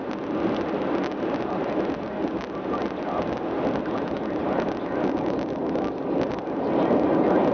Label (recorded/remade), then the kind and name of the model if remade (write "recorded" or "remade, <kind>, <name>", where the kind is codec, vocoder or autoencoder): recorded